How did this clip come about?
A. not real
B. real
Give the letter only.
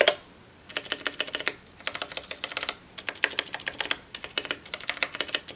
B